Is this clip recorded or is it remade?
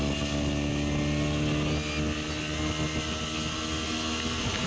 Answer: recorded